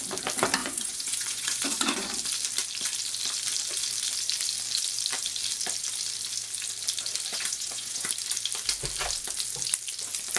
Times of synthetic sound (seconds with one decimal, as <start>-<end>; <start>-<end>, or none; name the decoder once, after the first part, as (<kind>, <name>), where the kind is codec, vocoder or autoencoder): 0.6-2.1 (vocoder, Vocos); 7.3-8.1

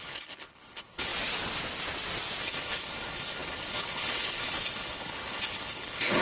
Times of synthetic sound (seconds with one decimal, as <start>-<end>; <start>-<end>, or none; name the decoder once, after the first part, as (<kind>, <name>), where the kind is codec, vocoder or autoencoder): 0.0-1.1 (codec, HILCodec); 2.4-6.2

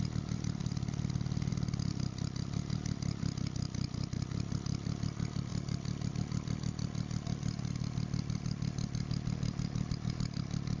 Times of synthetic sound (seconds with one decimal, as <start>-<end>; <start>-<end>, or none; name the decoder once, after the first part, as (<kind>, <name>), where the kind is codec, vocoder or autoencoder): none

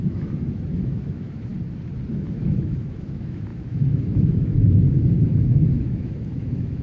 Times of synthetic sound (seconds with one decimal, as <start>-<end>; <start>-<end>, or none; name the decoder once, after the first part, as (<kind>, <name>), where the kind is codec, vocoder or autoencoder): 0.0-1.5 (autoencoder, DAC-VAE); 2.1-6.8

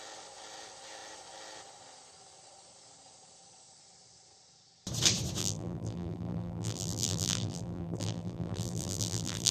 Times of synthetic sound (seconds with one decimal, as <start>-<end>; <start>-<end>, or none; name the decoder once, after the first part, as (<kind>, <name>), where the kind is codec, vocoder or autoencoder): 5.4-9.5 (vocoder, BigVGAN v2)

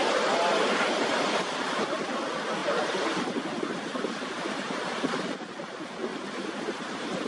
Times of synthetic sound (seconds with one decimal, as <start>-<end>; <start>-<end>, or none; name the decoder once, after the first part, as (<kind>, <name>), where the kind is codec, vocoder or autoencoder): 2.6-5.0 (vocoder, BigVGAN v2); 6.1-7.3

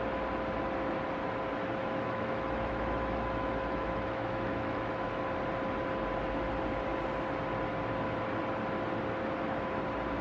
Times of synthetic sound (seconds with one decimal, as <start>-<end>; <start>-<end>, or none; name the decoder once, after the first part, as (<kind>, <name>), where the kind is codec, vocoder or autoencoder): 1.8-5.2 (autoencoder, DAC-VAE)

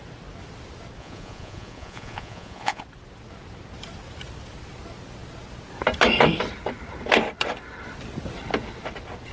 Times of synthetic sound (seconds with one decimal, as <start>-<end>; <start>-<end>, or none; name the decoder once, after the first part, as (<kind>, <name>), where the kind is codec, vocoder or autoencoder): 1.0-2.8 (vocoder, Vocos)